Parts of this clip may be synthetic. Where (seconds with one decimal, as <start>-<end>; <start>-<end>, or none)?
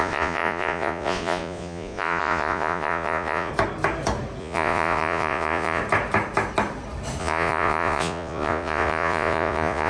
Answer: 0.0-3.5; 4.4-5.8; 7.2-9.9